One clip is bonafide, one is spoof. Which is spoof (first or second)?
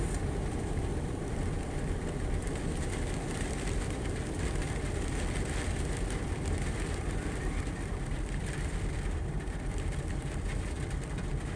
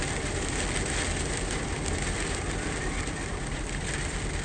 first